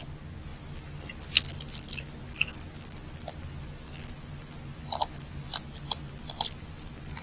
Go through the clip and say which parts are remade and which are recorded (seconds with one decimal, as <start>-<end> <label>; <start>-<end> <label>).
0.0-7.2 recorded